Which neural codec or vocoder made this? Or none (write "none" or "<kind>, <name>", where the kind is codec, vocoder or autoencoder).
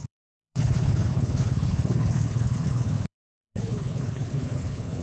codec, HILCodec